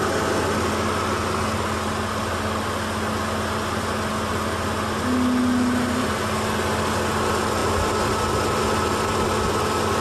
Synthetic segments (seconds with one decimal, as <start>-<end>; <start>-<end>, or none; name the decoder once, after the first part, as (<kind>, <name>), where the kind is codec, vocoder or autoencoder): none